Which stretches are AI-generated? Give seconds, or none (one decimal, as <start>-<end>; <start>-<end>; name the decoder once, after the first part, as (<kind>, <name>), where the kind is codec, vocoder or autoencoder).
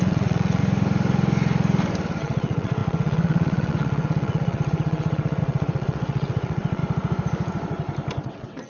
0.0-0.6 (vocoder, WaveNeXt); 2.2-6.8; 8.2-8.7